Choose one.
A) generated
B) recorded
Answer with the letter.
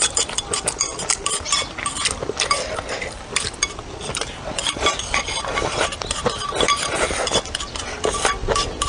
B